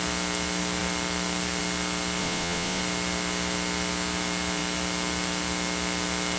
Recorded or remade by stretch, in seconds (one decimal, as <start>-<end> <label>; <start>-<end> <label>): 0.0-2.2 recorded; 2.2-2.8 remade; 2.8-6.4 recorded